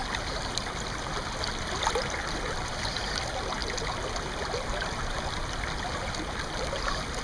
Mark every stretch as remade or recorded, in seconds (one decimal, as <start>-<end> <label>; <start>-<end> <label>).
0.0-7.2 recorded